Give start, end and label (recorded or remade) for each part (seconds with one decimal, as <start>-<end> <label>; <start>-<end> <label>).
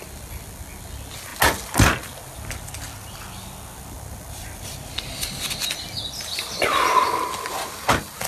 0.0-8.3 recorded